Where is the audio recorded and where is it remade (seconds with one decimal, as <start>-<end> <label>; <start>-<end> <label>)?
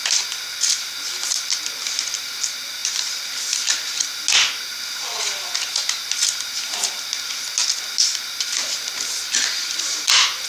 0.0-10.5 recorded